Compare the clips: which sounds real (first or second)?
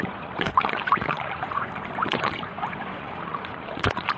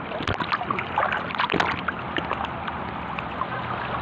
second